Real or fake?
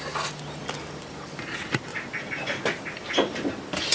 real